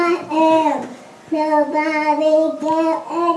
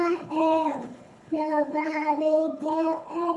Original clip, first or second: first